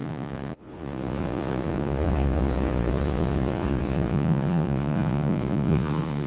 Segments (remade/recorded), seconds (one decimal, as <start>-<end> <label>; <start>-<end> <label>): 0.0-6.3 remade